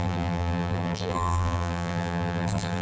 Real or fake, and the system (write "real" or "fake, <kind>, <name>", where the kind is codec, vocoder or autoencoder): fake, vocoder, BigVGAN v2